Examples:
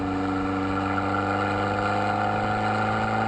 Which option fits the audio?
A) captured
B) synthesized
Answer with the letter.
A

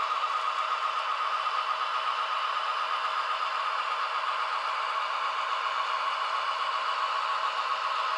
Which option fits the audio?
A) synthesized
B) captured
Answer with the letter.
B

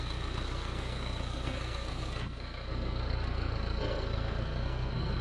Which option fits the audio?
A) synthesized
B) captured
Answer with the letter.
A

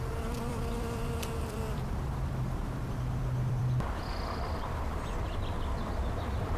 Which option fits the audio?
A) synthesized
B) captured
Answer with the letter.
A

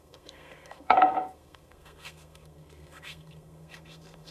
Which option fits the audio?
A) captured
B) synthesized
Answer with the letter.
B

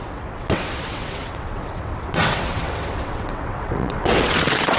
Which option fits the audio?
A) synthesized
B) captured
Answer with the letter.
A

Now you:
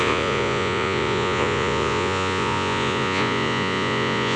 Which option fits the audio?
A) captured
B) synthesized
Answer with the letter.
B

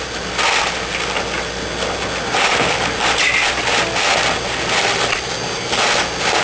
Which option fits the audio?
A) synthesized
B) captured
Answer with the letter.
B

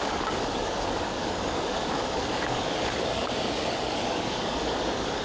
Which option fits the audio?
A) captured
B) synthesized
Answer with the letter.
B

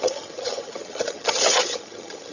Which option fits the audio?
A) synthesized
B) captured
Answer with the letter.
A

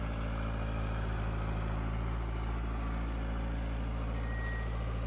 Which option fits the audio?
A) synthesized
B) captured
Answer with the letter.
B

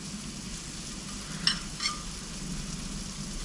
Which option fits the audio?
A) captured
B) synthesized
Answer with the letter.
A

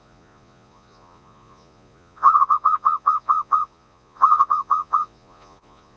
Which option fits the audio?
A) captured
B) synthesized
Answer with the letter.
B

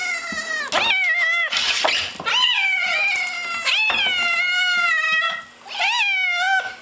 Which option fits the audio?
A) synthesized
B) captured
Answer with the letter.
B